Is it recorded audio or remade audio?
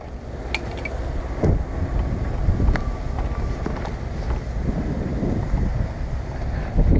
recorded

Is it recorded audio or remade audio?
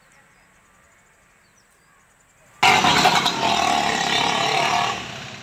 recorded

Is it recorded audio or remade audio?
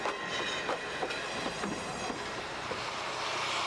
recorded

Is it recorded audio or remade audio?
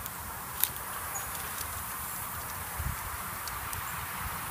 remade